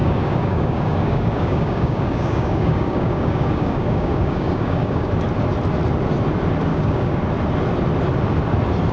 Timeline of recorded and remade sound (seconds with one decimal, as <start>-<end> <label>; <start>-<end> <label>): 0.0-5.1 remade; 5.1-6.7 recorded; 6.7-7.2 remade; 7.2-8.9 recorded